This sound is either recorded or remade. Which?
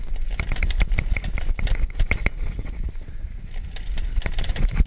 recorded